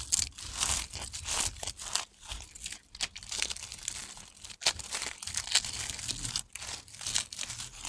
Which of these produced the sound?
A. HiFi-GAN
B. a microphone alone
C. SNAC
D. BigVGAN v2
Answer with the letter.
B